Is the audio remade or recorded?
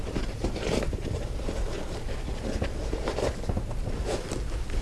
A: remade